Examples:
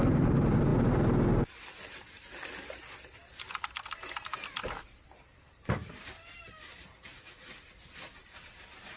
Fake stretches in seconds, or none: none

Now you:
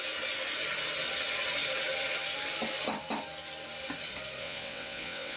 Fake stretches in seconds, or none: 4.4-5.4 (vocoder, WaveNeXt)

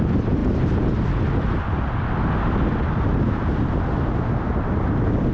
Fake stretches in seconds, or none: none

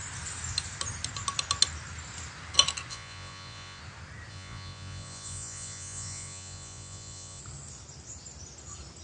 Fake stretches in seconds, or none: 2.9-3.8 (vocoder, Vocos); 4.3-7.4

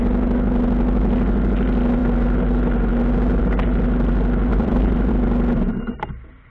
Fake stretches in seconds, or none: 4.5-5.1 (vocoder, BigVGAN v2)